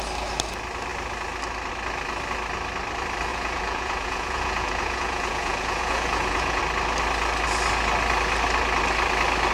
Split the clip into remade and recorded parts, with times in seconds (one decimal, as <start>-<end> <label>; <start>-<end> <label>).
0.0-3.3 recorded; 3.3-6.6 remade; 6.6-9.5 recorded